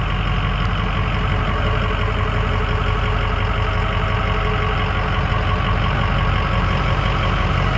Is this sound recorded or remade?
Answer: recorded